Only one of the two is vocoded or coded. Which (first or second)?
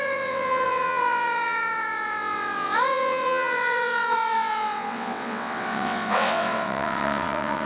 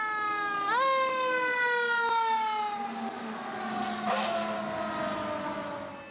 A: first